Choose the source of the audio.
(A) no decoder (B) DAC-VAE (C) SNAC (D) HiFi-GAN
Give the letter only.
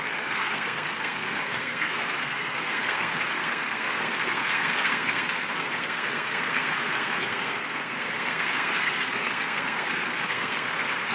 C